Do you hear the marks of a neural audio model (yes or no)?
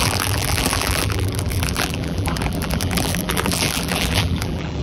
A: yes